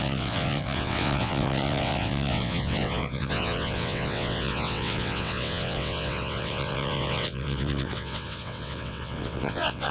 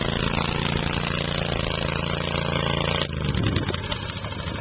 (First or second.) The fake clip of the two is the first